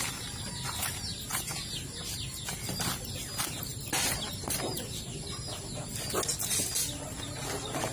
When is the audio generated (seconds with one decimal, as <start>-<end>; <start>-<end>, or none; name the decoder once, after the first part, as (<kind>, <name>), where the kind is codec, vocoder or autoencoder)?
none